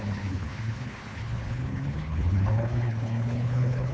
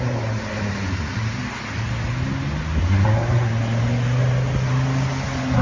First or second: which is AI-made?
first